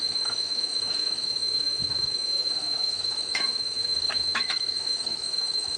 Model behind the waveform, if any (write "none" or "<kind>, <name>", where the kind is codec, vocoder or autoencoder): autoencoder, DAC-VAE